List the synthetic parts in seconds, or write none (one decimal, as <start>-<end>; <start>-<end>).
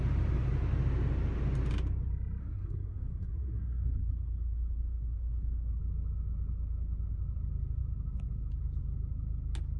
2.4-5.8